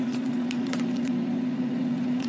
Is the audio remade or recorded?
remade